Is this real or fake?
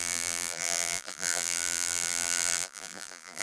fake